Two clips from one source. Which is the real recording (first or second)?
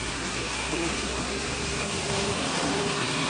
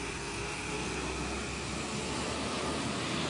second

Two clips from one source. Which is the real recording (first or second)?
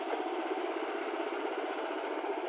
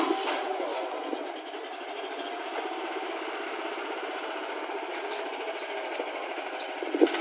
second